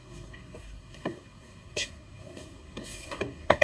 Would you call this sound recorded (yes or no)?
no